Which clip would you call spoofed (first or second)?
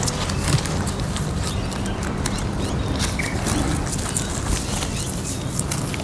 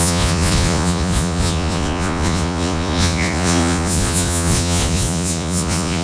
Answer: second